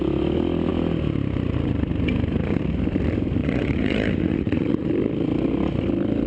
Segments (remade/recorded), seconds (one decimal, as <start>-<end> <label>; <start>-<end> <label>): 0.0-3.4 recorded; 3.4-4.9 remade; 4.9-6.3 recorded